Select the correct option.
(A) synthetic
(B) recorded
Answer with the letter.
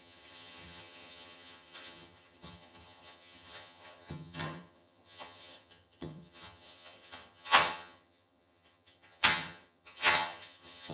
A